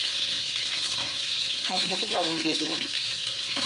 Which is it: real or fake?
fake